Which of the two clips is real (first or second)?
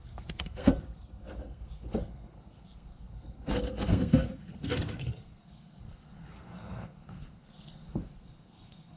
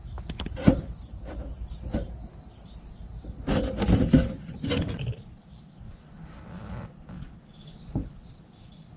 second